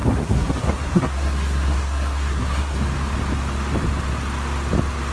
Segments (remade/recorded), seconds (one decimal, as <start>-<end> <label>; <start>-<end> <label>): 0.0-2.8 remade; 2.8-5.1 recorded